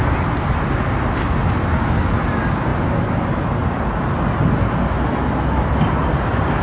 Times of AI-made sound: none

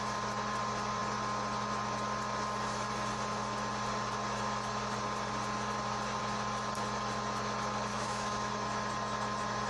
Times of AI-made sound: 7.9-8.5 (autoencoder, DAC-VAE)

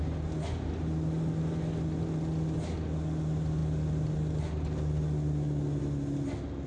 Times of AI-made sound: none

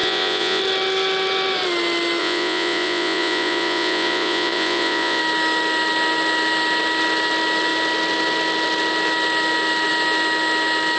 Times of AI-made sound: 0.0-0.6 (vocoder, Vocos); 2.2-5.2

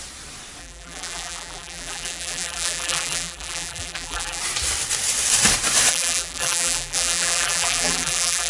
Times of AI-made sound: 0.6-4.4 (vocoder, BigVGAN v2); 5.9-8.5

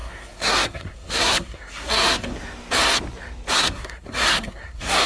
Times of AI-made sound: 0.0-2.3 (codec, SNAC); 3.5-5.1

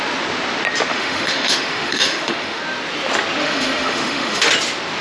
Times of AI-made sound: 0.9-2.6 (autoencoder, DAC-VAE); 3.4-4.5

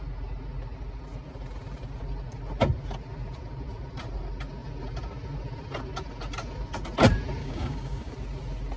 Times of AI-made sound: 7.4-8.1 (codec, DAC)